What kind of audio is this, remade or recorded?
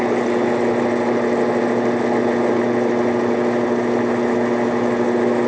recorded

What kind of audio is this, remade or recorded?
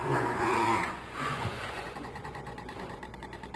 remade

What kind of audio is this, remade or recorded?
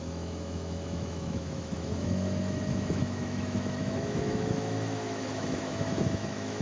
remade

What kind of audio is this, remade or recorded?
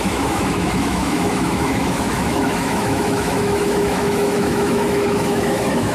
remade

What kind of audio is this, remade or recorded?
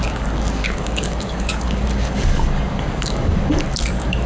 remade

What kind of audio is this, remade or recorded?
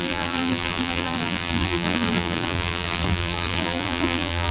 remade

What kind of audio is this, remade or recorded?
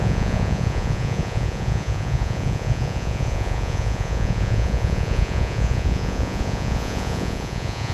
remade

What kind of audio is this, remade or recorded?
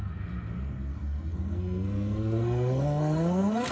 remade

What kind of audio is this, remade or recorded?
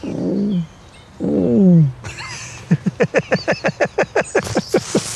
recorded